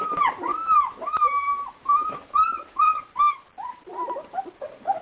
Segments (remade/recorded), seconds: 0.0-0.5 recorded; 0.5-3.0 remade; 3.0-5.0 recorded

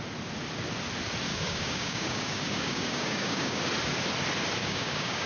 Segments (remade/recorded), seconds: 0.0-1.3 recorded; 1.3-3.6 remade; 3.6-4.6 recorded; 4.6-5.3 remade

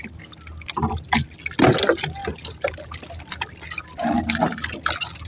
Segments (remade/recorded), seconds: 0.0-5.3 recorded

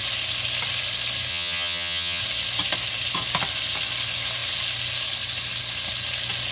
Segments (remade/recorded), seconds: 0.0-1.3 recorded; 1.3-2.2 remade; 2.2-6.5 recorded

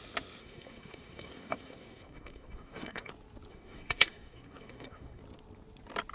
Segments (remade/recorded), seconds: 0.0-0.4 recorded; 0.4-3.1 remade; 3.1-3.5 recorded; 3.5-5.2 remade; 5.2-6.1 recorded

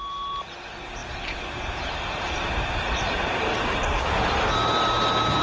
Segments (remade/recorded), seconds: 0.0-1.0 recorded; 1.0-3.4 remade; 3.4-5.4 recorded

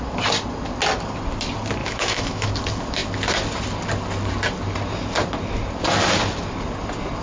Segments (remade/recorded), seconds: 0.0-1.8 recorded; 1.8-2.5 remade; 2.5-7.2 recorded